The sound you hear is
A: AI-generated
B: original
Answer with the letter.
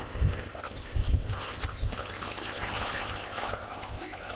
A